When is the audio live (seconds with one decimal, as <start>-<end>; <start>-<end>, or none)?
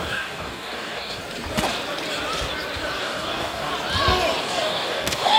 1.2-3.0; 3.7-4.4